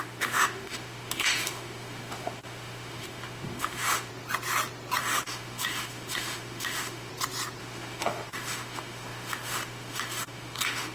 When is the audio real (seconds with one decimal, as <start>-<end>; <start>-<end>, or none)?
4.1-5.0; 7.1-7.6